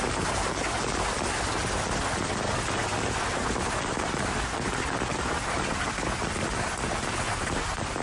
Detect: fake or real real